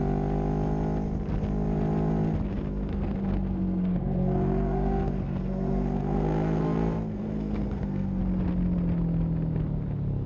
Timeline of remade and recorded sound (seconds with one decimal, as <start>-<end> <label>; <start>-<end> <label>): 0.0-2.9 recorded; 2.9-8.2 remade; 8.2-10.3 recorded